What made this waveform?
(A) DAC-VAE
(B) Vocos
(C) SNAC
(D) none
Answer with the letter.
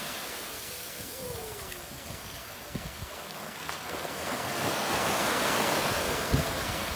C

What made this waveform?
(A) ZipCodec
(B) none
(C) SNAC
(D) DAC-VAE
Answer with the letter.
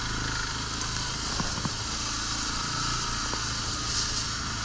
B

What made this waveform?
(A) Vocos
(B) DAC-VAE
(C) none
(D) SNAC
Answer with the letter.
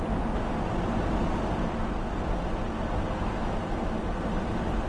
C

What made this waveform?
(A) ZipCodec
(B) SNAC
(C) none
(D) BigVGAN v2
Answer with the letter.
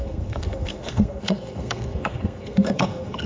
B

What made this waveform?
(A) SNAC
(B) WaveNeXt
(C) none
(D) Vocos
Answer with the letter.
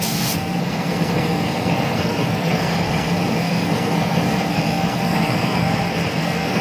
A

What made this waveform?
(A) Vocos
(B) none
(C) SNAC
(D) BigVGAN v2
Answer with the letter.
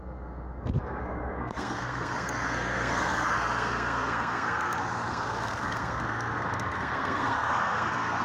C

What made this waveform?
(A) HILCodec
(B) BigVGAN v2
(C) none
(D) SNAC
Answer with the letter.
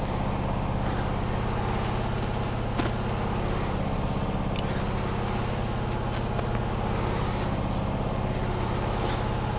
C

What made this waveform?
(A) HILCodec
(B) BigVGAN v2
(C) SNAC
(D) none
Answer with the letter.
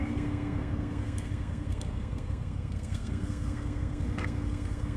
C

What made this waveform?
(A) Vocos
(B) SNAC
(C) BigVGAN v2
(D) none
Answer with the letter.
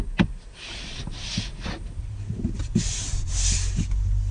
D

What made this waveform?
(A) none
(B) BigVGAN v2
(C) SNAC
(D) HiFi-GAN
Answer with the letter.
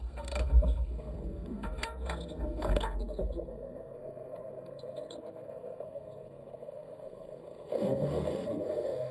C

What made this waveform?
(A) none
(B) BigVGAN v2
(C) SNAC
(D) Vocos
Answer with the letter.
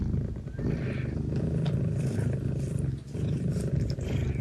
A